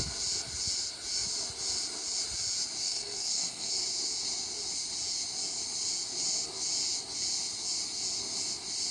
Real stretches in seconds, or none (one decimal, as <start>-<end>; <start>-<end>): 0.0-2.8; 3.7-8.9